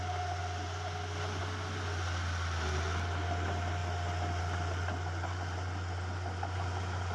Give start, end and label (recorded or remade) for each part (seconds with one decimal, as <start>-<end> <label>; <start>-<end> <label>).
0.0-7.1 recorded